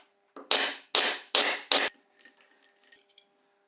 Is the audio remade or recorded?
recorded